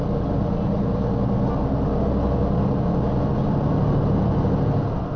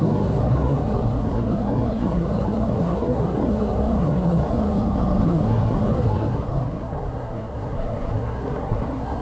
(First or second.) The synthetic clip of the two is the second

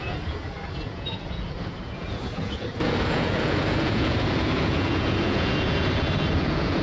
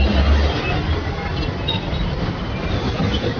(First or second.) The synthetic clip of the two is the first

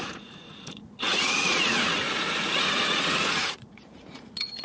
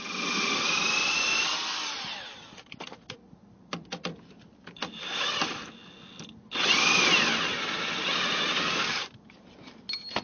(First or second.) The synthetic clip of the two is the first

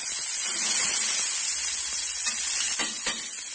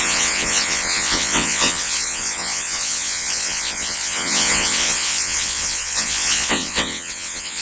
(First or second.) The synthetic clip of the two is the second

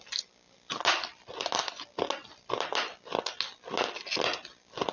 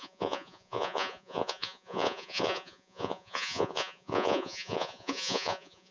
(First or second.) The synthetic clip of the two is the second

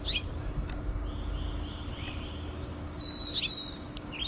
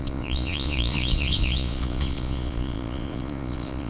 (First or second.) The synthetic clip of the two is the second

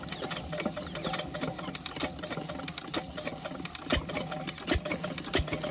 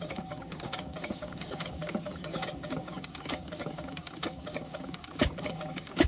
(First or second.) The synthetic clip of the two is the second